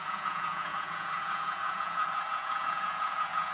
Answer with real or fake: fake